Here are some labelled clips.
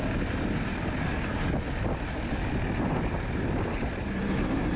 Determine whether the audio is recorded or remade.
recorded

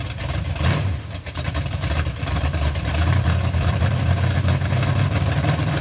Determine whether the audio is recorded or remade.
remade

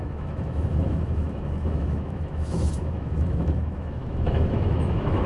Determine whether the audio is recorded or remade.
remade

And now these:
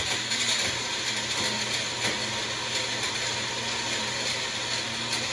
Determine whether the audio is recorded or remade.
recorded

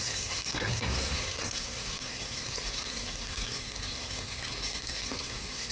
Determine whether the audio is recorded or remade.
remade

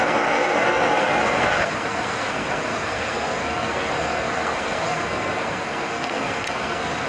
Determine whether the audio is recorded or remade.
remade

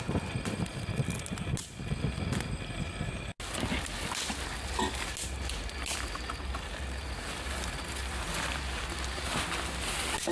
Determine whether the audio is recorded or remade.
recorded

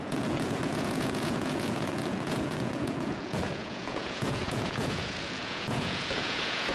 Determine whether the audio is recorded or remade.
remade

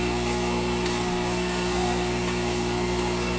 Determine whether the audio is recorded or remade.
remade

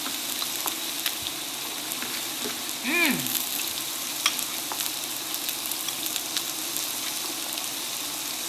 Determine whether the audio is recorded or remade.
recorded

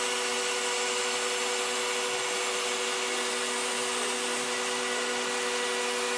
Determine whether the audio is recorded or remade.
recorded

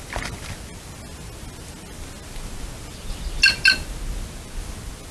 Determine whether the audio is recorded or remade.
recorded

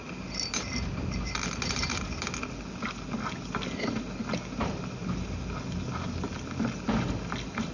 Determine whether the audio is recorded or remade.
recorded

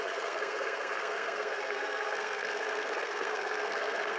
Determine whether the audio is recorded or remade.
remade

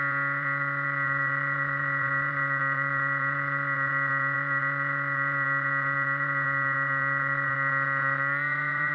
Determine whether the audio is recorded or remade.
remade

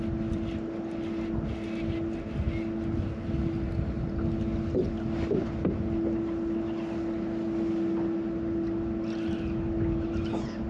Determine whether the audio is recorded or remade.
recorded